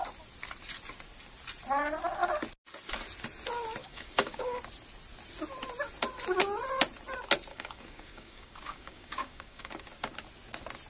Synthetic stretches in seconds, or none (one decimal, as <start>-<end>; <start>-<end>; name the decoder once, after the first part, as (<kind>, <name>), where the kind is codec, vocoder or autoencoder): 3.8-4.6 (codec, DAC); 7.5-9.7